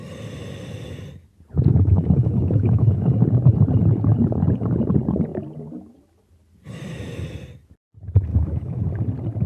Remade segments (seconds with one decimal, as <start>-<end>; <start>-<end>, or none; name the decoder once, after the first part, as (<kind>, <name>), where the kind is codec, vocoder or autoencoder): 1.7-3.1 (autoencoder, DAC-VAE); 8.3-8.9